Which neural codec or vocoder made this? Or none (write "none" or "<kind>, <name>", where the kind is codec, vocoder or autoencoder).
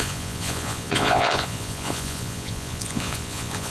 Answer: vocoder, Vocos